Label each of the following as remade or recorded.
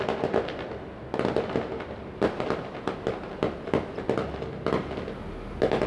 recorded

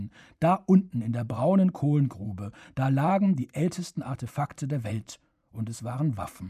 remade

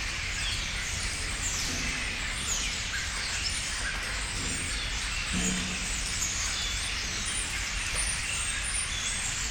recorded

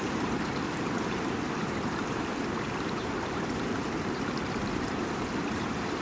remade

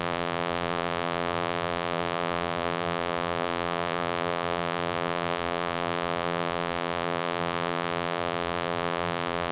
remade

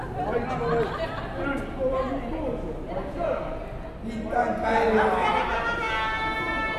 recorded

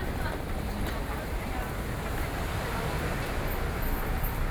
remade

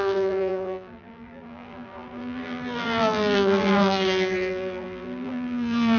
remade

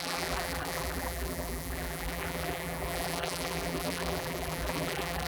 remade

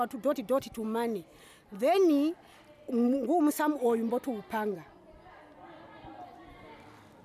recorded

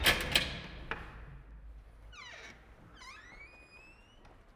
recorded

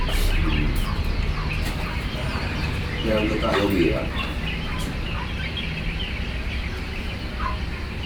recorded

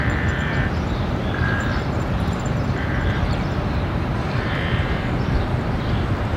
remade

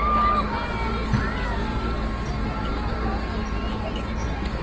recorded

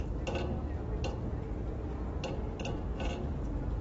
recorded